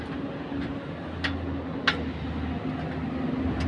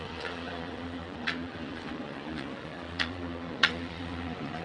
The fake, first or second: second